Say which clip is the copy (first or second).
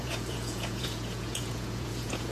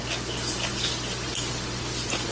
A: first